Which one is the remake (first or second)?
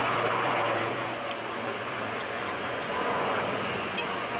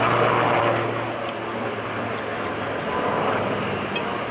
first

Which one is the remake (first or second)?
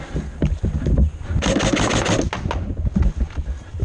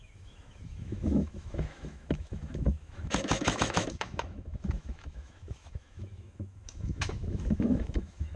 second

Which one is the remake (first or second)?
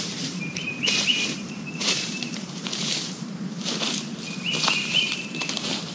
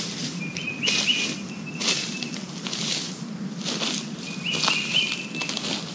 first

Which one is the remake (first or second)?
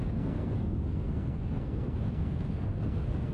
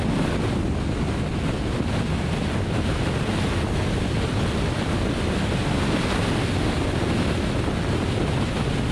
first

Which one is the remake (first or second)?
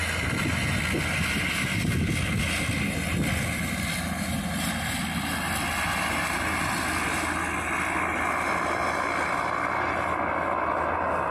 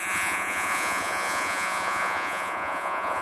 second